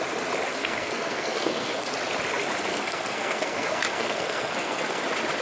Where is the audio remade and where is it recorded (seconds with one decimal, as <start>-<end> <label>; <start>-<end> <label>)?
0.0-0.5 recorded; 0.5-1.9 remade; 1.9-2.7 recorded; 2.7-5.0 remade; 5.0-5.4 recorded